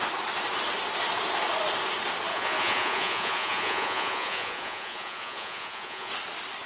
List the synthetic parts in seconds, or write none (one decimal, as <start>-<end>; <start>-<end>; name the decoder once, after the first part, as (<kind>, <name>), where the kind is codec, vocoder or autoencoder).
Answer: 2.3-6.1 (vocoder, Vocos)